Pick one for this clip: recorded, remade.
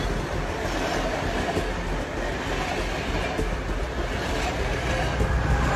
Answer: recorded